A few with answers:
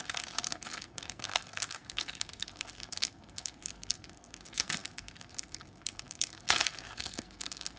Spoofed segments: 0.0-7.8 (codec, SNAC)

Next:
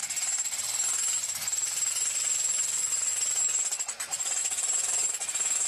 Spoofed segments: none

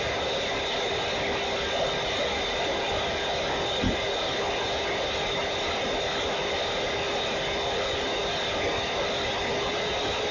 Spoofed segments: none

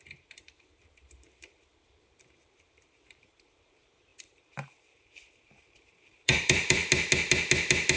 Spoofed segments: 0.0-6.8 (vocoder, BigVGAN v2)

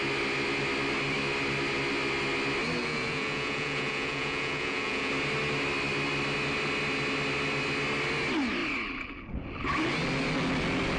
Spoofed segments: 2.8-5.1 (vocoder, Vocos)

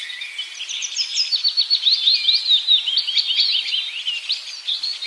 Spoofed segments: none

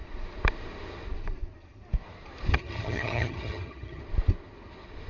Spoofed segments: 2.5-4.0 (vocoder, HiFi-GAN)

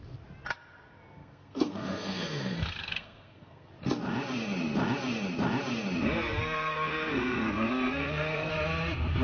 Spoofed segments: 1.2-3.7 (codec, SNAC); 6.4-8.5